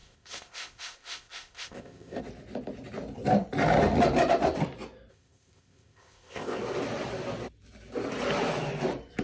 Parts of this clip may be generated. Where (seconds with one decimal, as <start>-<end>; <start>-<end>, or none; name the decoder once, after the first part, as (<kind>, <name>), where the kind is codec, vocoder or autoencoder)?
0.0-2.2 (codec, ZipCodec); 5.1-6.6